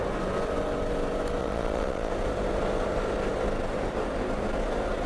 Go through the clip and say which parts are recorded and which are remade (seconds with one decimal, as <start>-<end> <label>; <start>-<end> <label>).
0.0-1.4 recorded; 1.4-2.1 remade; 2.1-5.1 recorded